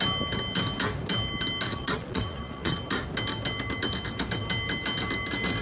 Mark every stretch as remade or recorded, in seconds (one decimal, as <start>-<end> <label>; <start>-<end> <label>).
0.0-1.7 recorded; 1.7-2.8 remade; 2.8-5.6 recorded